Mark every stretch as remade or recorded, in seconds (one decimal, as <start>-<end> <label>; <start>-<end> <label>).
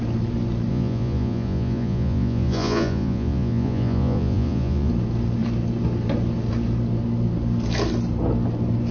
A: 0.0-0.7 recorded; 0.7-4.9 remade; 4.9-8.9 recorded